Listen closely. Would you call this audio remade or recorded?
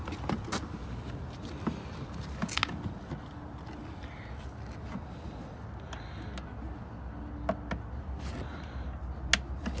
recorded